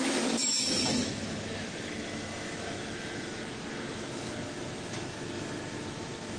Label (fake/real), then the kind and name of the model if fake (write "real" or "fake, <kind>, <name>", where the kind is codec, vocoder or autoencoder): fake, autoencoder, DAC-VAE